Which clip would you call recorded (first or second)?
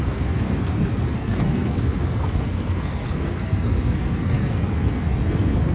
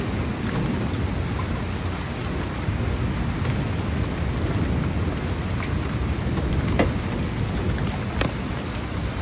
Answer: second